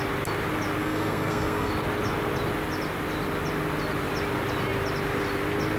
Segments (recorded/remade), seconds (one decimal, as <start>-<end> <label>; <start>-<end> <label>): 0.0-0.8 recorded; 0.8-1.7 remade; 1.7-5.8 recorded